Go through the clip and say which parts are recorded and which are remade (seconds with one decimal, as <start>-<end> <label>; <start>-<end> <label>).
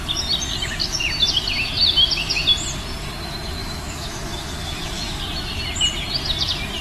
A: 0.0-3.6 recorded; 3.6-5.2 remade; 5.2-6.8 recorded